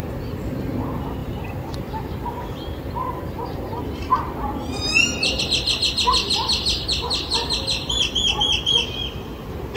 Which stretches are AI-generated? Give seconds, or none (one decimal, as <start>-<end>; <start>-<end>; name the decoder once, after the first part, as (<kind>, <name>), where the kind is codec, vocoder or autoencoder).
1.2-5.4 (vocoder, BigVGAN v2)